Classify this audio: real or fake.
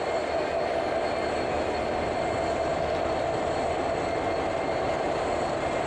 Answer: real